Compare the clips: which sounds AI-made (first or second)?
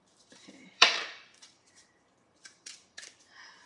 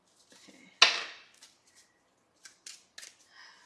first